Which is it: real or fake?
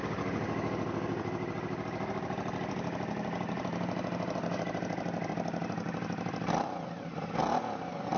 real